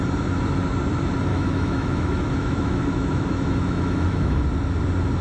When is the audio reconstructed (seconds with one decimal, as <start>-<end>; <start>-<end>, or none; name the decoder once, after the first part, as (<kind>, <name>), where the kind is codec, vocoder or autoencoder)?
1.3-4.4 (autoencoder, DAC-VAE)